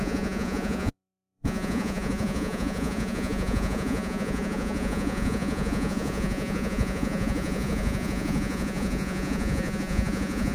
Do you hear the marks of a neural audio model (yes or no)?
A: yes